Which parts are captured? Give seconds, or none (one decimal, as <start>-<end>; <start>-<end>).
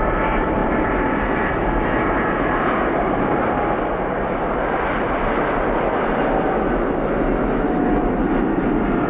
0.0-9.1